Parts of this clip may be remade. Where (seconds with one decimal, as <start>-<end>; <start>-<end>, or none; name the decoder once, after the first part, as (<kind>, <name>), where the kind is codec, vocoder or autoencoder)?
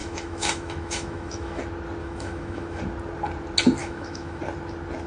0.0-1.6 (autoencoder, DAC-VAE); 2.0-2.8; 3.8-4.4